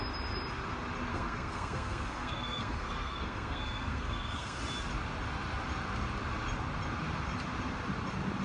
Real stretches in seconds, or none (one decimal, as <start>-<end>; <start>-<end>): 0.0-1.1; 4.6-8.4

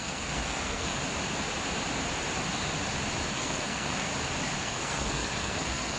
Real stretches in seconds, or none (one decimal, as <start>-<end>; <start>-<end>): 1.0-3.3; 4.1-4.6

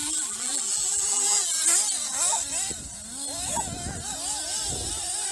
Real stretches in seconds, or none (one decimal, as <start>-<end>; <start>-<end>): 1.6-5.3

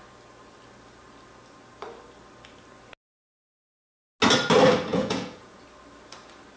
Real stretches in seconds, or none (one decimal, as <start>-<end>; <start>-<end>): 0.0-4.9; 5.6-6.6

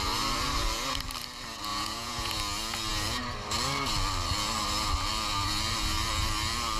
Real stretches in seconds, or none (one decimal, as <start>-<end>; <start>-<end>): 0.0-1.7; 2.3-6.8

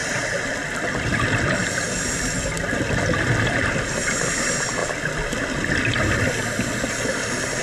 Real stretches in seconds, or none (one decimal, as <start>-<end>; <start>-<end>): 0.0-7.6

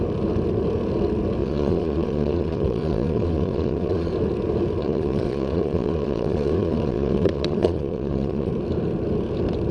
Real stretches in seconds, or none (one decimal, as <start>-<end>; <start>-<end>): 0.0-1.4; 4.1-4.8; 8.5-9.7

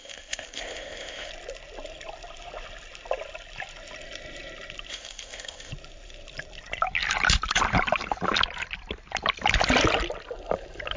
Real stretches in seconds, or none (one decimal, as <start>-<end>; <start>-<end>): 1.3-4.9; 5.7-11.0